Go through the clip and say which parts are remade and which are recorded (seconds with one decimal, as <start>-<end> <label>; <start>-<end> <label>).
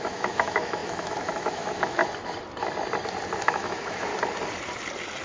0.0-2.0 remade; 2.0-3.4 recorded; 3.4-4.1 remade; 4.1-5.2 recorded